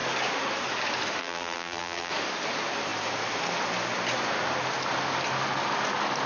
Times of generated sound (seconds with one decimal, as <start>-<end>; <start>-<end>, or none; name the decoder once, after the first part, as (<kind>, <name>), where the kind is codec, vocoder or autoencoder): 1.2-2.1 (vocoder, BigVGAN v2)